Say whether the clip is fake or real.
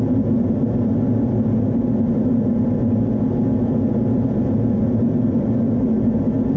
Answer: fake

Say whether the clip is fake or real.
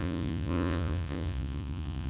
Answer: fake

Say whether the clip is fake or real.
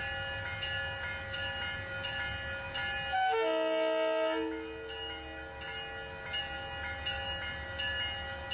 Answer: real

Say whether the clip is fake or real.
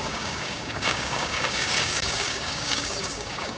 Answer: fake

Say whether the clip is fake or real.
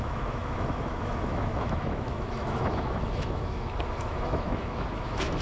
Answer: fake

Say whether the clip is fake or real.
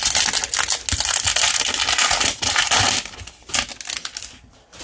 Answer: real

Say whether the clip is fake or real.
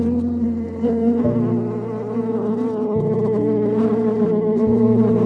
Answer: real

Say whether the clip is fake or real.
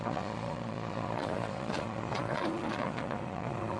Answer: fake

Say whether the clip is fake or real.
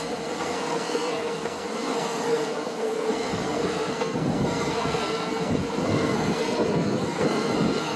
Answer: fake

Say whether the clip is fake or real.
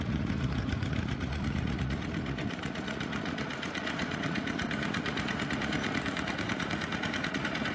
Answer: fake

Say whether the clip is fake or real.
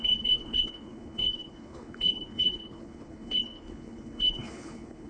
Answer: fake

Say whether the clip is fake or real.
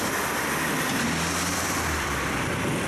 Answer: fake